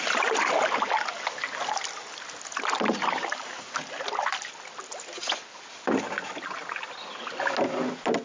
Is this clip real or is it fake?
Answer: real